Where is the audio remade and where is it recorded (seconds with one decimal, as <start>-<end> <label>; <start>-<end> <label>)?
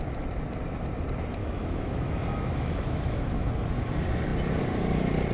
0.0-1.4 recorded; 1.4-3.5 remade; 3.5-5.3 recorded